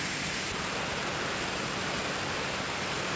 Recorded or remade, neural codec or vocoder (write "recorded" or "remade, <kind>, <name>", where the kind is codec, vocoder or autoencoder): recorded